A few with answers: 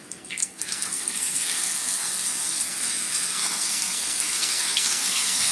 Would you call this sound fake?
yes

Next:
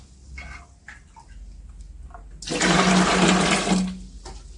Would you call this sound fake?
no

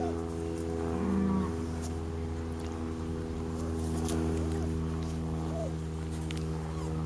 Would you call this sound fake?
no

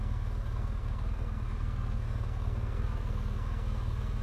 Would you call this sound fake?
yes